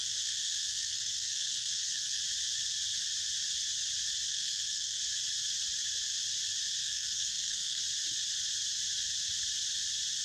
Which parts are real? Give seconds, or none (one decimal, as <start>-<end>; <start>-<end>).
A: 2.2-4.3; 5.0-6.8; 7.8-10.2